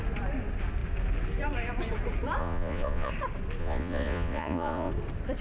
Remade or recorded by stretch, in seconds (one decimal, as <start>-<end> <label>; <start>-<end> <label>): 0.0-2.4 recorded; 2.4-3.1 remade; 3.1-3.6 recorded; 3.6-4.9 remade; 4.9-5.4 recorded